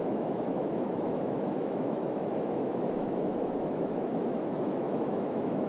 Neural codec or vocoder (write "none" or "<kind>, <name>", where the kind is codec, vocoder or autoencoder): autoencoder, DAC-VAE